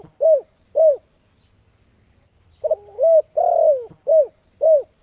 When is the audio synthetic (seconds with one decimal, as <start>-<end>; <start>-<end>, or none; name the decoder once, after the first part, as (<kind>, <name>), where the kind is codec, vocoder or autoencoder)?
none